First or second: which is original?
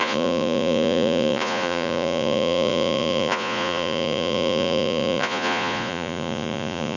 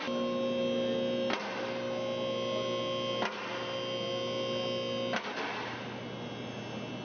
second